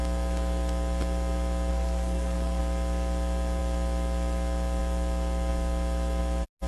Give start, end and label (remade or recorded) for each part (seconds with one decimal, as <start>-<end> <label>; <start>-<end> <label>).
0.0-1.7 recorded; 1.7-2.6 remade; 2.6-6.7 recorded